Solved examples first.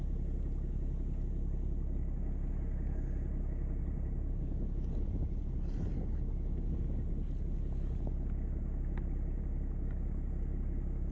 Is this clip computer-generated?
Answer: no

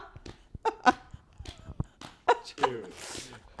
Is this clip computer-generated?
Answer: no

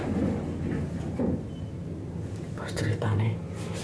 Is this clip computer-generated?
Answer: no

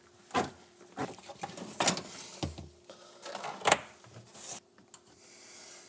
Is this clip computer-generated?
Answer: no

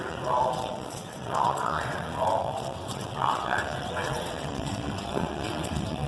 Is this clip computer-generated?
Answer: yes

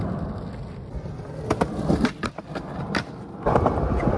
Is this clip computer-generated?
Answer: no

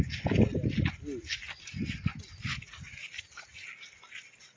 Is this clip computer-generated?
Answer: no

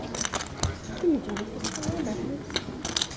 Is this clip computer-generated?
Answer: no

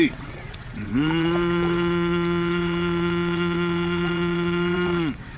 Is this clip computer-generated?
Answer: yes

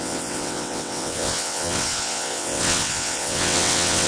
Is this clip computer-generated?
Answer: yes